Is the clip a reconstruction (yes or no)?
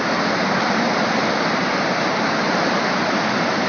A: no